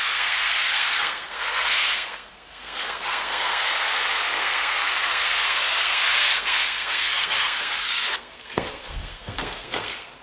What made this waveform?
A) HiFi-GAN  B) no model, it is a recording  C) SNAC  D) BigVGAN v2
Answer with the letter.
C